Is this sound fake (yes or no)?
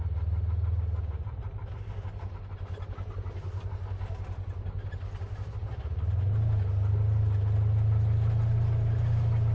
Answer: no